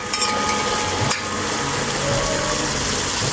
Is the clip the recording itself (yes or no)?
yes